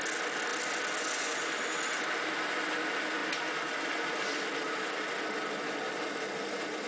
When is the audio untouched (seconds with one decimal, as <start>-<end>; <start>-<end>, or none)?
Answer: 0.0-6.9